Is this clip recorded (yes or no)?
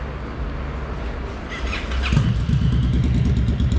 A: yes